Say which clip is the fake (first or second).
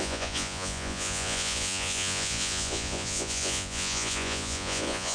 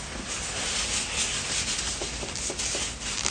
first